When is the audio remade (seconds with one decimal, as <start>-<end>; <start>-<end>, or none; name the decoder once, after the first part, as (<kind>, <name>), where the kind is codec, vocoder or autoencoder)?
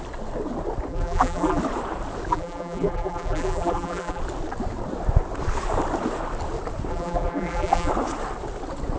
0.9-1.6 (vocoder, BigVGAN v2); 2.3-4.2; 6.9-7.9